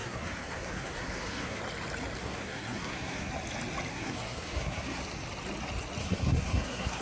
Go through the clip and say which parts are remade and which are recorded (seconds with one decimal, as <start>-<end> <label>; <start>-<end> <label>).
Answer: 0.0-1.6 remade; 1.6-2.2 recorded; 2.2-3.3 remade; 3.3-3.9 recorded; 3.9-5.0 remade; 5.0-6.0 recorded; 6.0-7.0 remade